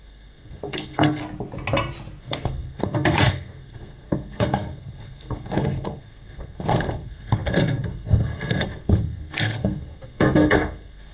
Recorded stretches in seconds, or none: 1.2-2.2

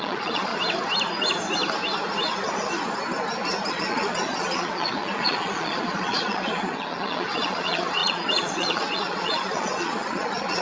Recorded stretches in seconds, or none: 0.5-3.7

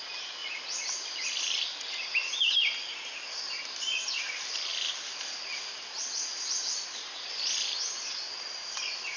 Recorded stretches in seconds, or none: 0.0-9.2

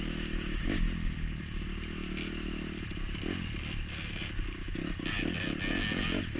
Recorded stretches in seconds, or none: 0.0-6.4

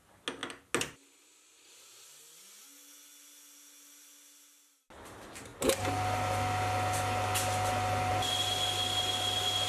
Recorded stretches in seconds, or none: 0.0-9.7